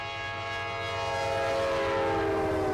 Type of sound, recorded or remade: recorded